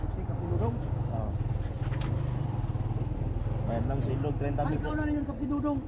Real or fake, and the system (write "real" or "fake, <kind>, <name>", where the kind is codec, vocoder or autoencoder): real